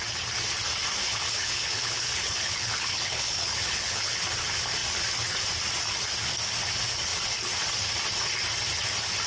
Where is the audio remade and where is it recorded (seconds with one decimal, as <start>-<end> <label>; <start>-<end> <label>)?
0.0-1.0 recorded; 1.0-4.2 remade; 4.2-9.3 recorded